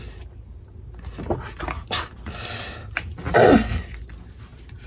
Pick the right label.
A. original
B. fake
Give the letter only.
A